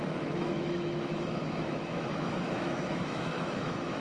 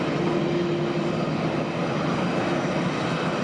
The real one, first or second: second